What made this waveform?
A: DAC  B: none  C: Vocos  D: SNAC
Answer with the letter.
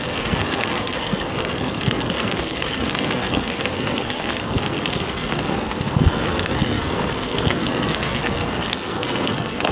D